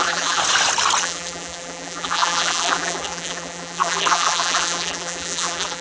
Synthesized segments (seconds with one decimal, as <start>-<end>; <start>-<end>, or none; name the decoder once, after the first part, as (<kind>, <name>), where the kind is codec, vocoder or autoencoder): 0.0-0.4 (vocoder, BigVGAN v2); 1.0-5.8